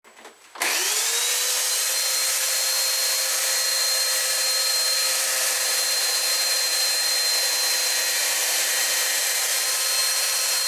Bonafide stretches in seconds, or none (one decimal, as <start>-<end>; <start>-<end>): 0.0-3.7; 7.3-8.2; 9.5-10.7